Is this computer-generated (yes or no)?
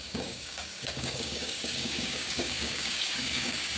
yes